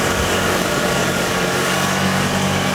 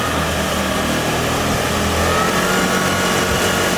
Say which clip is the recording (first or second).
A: second